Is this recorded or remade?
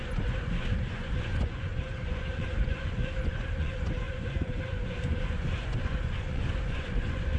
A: remade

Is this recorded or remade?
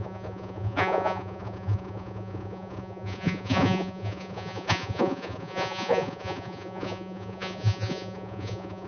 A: remade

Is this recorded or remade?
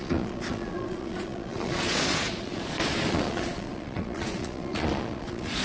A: remade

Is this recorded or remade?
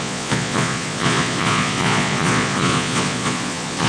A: remade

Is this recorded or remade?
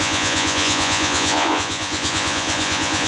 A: remade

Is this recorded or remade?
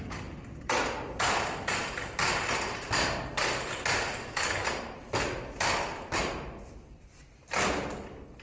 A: recorded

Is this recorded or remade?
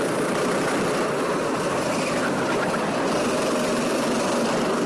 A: recorded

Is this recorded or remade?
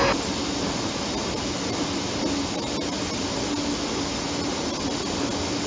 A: recorded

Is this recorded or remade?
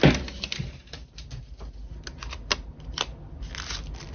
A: recorded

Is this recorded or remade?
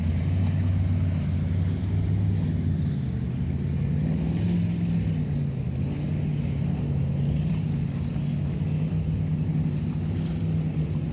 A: recorded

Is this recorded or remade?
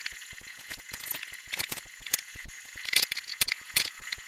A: remade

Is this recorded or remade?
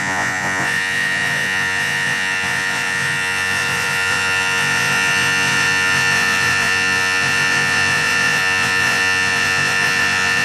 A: remade